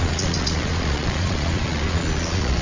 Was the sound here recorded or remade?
remade